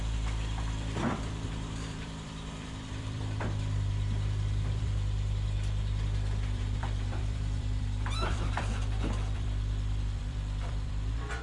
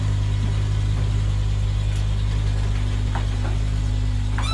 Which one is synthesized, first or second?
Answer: first